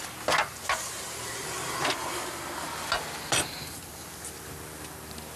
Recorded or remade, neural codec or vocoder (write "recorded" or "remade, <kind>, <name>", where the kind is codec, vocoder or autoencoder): recorded